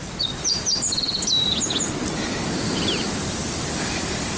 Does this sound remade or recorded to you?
recorded